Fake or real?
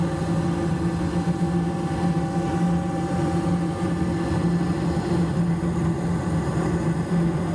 real